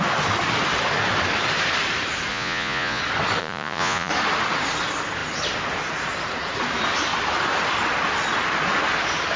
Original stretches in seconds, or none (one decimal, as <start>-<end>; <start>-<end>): 0.0-2.3; 3.0-3.4; 4.1-9.4